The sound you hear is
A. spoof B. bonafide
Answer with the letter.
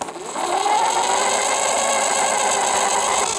B